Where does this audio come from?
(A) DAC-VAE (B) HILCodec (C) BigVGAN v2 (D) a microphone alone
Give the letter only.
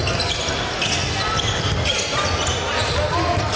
D